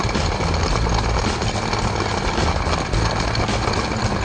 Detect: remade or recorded recorded